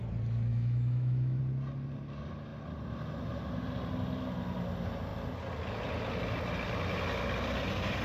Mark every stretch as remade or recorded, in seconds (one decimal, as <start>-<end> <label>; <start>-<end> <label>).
0.0-0.5 recorded; 0.5-1.4 remade; 1.4-8.0 recorded